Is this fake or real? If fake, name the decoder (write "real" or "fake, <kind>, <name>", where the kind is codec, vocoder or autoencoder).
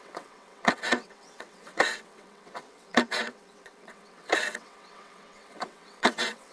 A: fake, vocoder, WaveNeXt